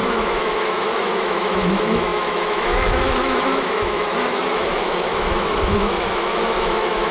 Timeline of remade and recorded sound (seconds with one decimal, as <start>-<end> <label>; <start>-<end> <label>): 0.0-7.1 remade